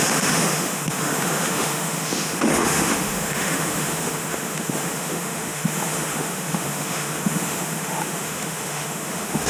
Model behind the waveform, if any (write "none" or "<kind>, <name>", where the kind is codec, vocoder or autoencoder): autoencoder, DAC-VAE